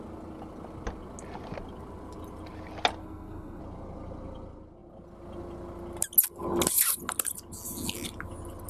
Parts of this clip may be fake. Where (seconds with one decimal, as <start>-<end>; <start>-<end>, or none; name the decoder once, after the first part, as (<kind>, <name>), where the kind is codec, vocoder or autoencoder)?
3.0-3.6 (codec, SNAC)